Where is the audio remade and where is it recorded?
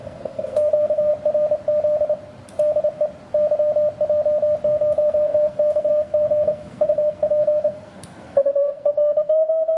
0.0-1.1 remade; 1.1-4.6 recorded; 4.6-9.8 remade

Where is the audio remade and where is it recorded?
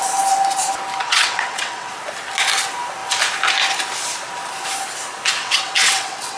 0.0-1.0 recorded; 1.0-1.9 remade; 1.9-5.4 recorded; 5.4-6.4 remade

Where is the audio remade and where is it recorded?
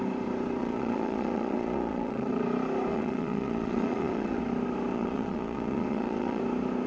0.0-0.6 recorded; 0.6-2.4 remade; 2.4-2.9 recorded; 2.9-4.4 remade; 4.4-4.9 recorded; 4.9-6.4 remade; 6.4-6.9 recorded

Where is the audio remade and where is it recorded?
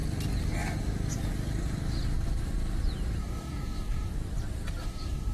0.0-3.2 recorded; 3.2-4.1 remade; 4.1-4.8 recorded; 4.8-5.3 remade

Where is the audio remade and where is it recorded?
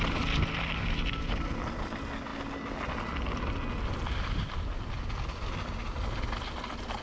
0.0-7.0 recorded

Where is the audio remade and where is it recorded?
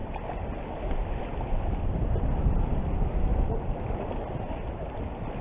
0.0-5.4 recorded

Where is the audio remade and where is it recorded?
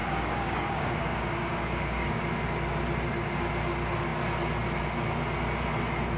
0.0-2.2 remade; 2.2-6.2 recorded